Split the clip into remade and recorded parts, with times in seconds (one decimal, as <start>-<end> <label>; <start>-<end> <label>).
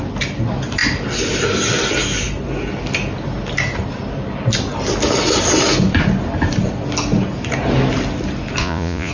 0.0-8.6 recorded; 8.6-9.1 remade